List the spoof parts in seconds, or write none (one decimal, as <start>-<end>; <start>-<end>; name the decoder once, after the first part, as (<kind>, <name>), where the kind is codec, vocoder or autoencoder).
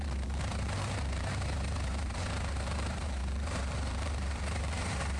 0.0-5.2 (vocoder, BigVGAN v2)